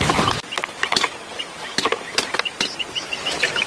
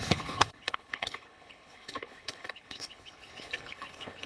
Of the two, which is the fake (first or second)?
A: second